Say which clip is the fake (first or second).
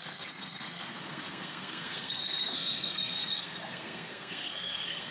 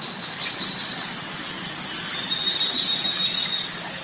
first